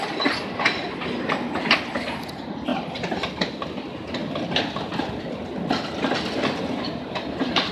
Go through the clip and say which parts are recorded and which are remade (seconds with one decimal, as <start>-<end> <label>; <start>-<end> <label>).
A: 0.0-2.7 recorded; 2.7-3.3 remade; 3.3-7.7 recorded